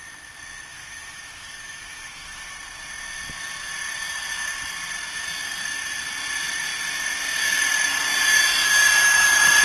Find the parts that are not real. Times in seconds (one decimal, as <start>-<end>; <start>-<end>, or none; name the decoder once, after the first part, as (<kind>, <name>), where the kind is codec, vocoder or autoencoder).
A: 0.7-2.5 (autoencoder, DAC-VAE)